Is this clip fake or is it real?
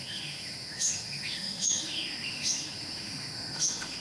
fake